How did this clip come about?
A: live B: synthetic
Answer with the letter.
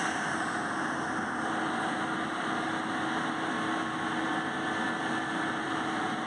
A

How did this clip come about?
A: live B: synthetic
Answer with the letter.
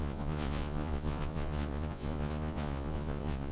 B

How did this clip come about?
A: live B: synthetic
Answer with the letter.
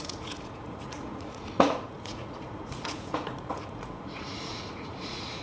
B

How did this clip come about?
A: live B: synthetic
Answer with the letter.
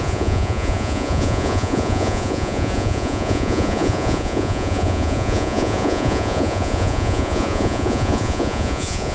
B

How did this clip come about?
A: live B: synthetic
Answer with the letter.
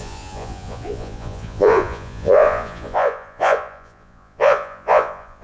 B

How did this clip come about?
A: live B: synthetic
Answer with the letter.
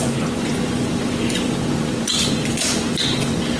B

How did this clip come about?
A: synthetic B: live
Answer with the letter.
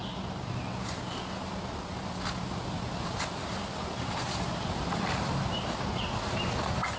B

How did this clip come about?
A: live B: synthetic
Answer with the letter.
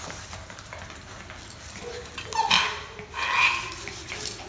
A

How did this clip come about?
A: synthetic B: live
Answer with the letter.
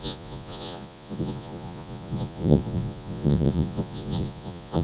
A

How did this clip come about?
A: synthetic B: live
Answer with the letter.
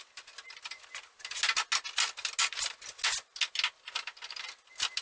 B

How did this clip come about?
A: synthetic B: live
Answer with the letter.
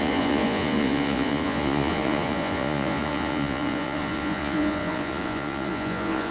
A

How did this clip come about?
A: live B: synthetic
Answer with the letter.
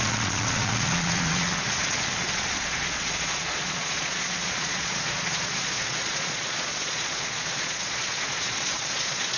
B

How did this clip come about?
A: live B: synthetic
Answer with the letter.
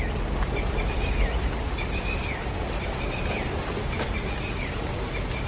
A